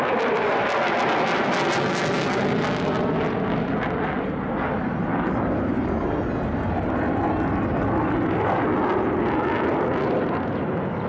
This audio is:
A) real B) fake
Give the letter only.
A